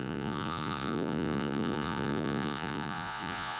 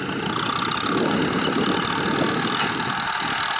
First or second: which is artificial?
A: first